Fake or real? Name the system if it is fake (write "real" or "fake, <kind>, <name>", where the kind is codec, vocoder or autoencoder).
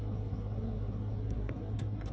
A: fake, codec, SNAC